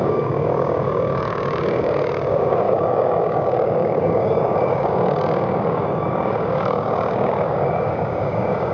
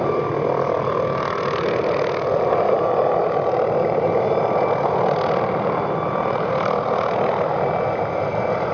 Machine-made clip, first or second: first